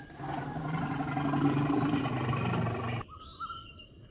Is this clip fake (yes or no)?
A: no